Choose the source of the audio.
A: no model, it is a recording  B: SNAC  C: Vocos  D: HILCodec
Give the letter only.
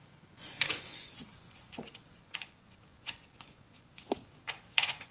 C